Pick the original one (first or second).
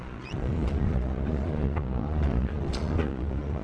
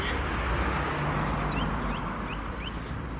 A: second